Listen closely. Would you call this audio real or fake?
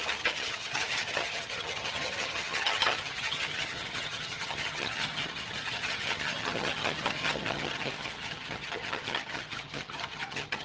fake